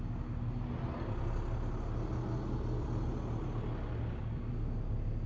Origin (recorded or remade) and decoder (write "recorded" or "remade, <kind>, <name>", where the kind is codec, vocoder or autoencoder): recorded